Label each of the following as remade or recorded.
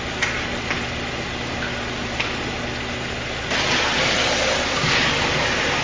recorded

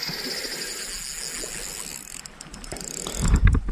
recorded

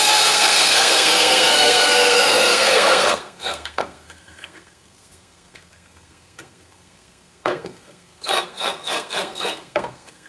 remade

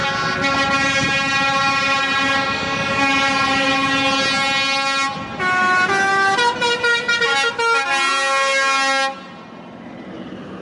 recorded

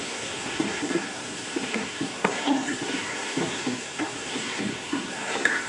remade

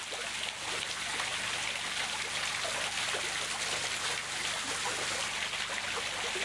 recorded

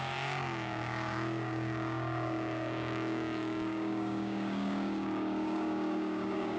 remade